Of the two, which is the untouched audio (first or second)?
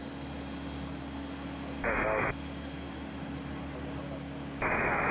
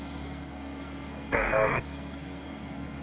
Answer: first